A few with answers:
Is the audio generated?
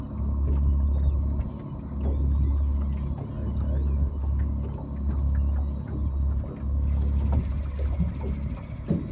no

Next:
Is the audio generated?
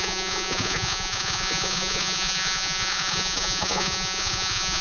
yes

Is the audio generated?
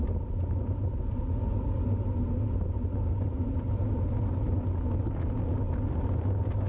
no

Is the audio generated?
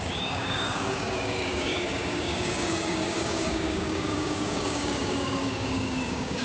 yes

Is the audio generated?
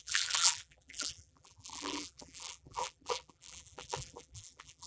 yes